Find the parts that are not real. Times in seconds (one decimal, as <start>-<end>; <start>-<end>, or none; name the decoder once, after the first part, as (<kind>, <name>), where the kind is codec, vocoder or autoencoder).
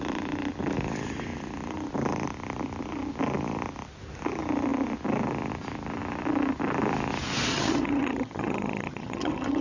7.5-9.6 (vocoder, HiFi-GAN)